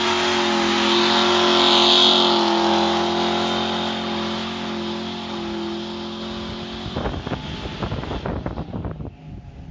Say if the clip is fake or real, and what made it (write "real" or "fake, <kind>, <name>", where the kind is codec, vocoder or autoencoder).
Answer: real